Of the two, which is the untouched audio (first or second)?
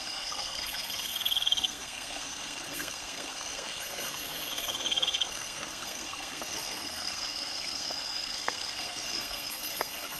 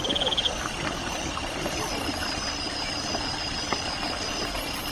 second